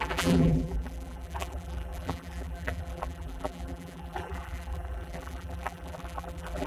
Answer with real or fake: fake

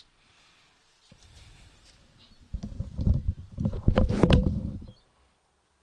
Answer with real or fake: real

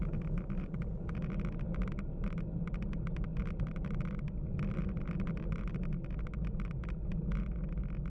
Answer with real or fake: real